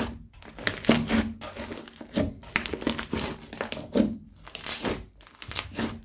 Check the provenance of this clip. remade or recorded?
recorded